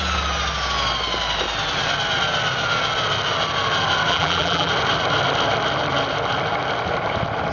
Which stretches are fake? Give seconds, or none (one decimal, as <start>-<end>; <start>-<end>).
4.1-4.7

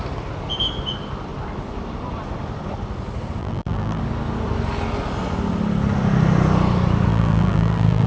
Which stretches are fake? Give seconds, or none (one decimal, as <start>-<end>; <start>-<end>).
3.4-4.0; 7.1-8.1

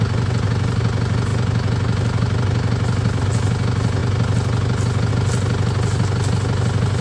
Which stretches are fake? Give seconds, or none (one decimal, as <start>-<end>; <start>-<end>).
none

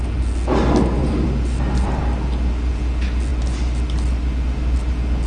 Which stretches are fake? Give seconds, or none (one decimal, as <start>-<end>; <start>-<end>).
1.0-2.0; 3.3-5.3

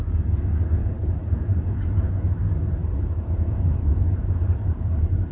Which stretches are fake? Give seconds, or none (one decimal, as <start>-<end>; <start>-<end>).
0.8-2.1; 2.8-5.3

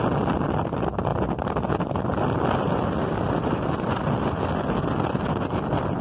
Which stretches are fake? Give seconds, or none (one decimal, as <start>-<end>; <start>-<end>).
none

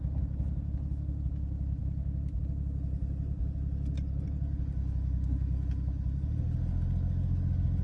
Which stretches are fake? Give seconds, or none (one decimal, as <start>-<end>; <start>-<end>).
none

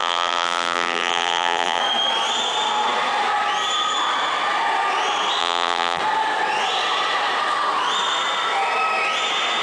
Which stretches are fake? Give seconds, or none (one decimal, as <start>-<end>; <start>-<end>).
0.0-1.8; 5.4-6.0